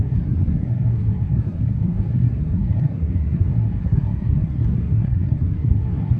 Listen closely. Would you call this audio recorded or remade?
remade